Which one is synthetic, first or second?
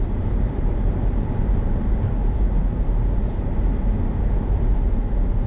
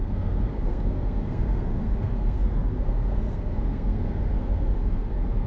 second